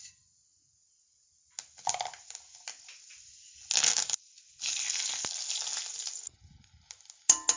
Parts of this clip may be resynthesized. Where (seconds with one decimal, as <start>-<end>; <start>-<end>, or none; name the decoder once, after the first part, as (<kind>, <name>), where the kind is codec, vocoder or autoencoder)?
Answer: none